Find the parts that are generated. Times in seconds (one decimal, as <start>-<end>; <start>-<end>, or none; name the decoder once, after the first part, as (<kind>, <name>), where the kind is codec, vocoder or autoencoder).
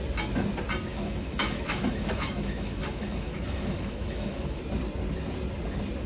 0.9-4.6 (autoencoder, DAC-VAE)